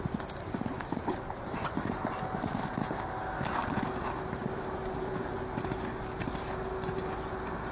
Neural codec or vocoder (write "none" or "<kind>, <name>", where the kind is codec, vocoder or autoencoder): none